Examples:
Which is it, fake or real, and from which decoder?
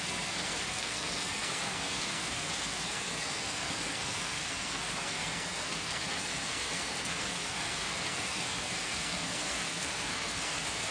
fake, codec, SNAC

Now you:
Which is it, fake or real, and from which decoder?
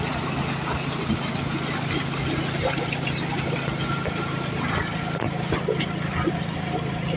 real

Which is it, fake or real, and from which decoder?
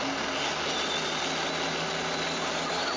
real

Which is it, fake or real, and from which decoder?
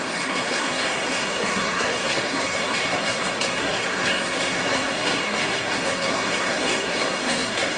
fake, codec, SNAC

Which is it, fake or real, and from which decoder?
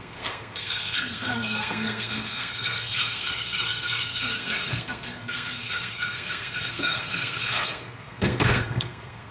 fake, codec, SNAC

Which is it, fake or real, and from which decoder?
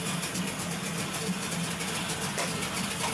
real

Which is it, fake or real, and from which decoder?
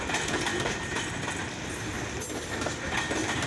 real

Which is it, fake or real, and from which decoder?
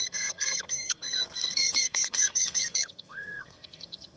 fake, codec, SNAC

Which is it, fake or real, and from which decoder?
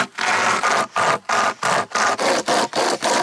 real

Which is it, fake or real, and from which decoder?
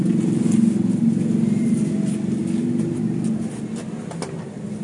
real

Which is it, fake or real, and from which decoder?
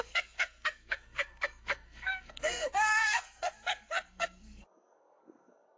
fake, codec, SNAC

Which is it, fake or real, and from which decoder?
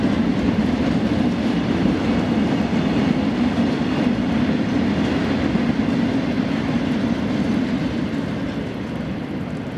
real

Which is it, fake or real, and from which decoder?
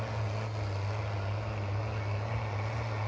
real